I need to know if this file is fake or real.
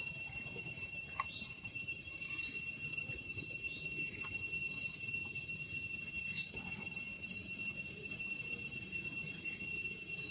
fake